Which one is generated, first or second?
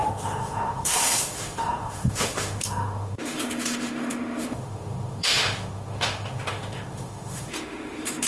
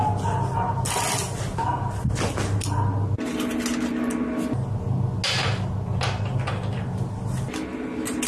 first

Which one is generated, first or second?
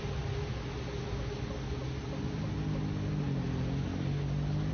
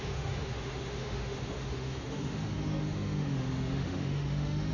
second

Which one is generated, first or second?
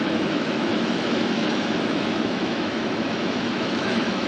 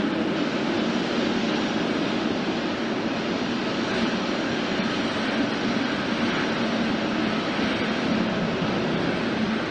first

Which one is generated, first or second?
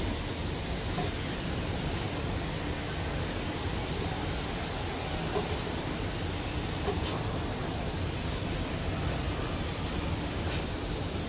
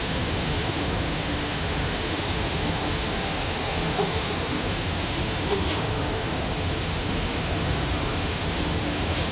second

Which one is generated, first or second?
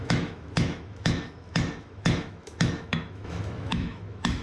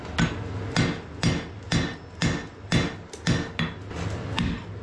first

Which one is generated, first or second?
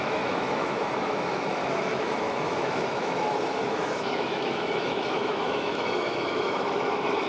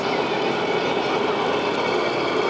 first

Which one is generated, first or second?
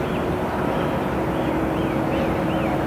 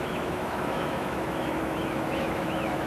second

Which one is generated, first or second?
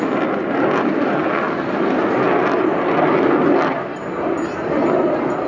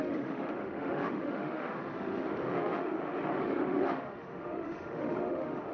second